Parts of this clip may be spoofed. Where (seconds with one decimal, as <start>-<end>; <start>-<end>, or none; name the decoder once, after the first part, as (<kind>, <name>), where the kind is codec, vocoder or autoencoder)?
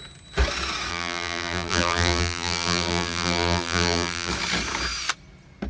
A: 0.9-4.3 (vocoder, BigVGAN v2)